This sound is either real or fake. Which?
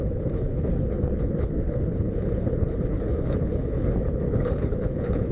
fake